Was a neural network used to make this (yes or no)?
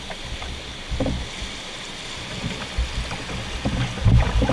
no